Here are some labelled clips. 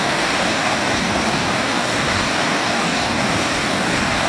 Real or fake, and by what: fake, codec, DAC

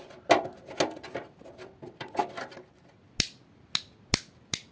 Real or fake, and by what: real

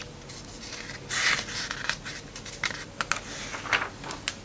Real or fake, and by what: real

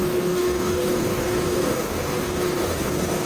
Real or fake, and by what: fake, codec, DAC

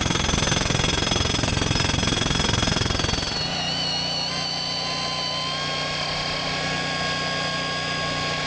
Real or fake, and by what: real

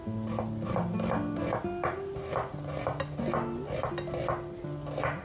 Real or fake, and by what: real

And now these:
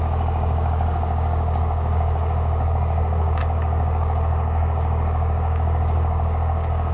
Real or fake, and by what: fake, codec, DAC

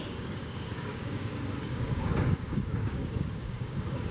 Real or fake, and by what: fake, codec, DAC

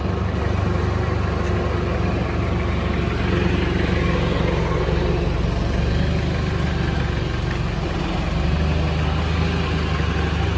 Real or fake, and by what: real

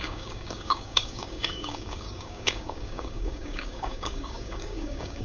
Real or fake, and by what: fake, codec, DAC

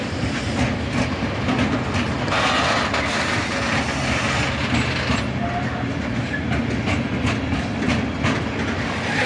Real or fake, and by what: real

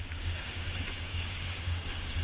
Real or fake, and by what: fake, codec, DAC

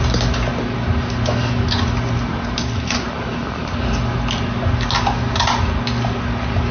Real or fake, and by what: real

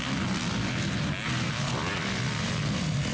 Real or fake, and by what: real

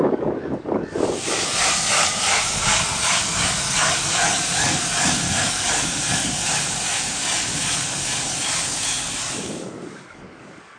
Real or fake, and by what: fake, codec, DAC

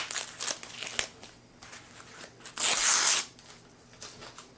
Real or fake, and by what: real